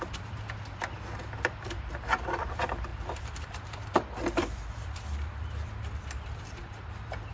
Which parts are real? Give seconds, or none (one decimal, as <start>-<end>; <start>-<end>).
none